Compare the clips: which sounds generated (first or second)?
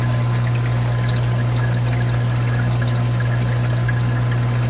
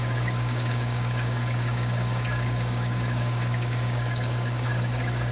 second